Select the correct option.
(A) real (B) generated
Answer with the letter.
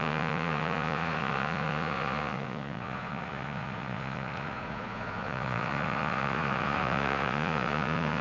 B